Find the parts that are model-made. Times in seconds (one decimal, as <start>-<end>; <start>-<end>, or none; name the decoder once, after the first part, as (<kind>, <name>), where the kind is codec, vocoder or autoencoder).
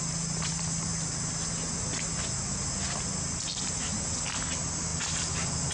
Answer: none